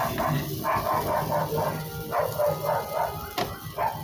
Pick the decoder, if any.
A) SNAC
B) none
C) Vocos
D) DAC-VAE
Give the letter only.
B